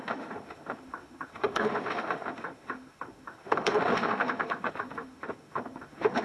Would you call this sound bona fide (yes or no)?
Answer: no